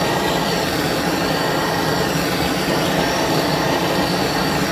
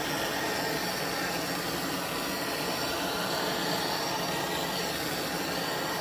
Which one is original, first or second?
second